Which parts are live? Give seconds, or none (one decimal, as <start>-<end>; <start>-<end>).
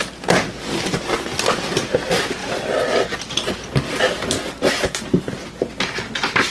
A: 0.0-6.5